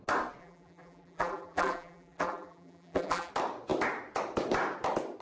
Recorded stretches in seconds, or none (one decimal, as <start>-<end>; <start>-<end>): 0.0-0.4; 3.3-5.2

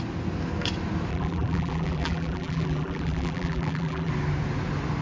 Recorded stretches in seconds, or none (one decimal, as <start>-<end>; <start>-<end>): 0.0-1.1; 4.1-5.0

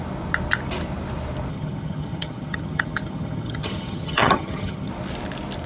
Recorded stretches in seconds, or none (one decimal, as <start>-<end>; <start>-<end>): 0.0-1.5; 4.9-5.7

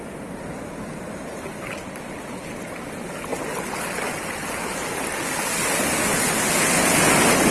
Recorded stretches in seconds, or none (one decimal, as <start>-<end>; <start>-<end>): 0.0-7.5

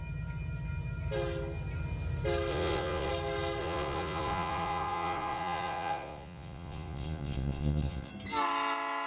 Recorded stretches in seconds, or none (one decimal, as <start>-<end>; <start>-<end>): 0.0-2.5; 3.1-3.6; 8.1-9.1

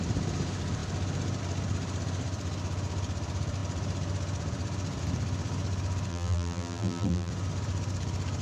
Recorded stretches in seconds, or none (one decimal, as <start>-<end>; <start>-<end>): 0.0-6.1; 7.3-8.4

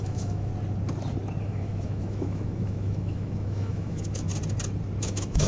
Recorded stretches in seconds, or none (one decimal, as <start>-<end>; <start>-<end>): 0.5-1.4; 4.3-5.0